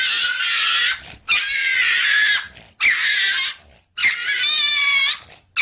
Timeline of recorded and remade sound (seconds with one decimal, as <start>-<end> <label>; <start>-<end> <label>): 0.0-5.6 recorded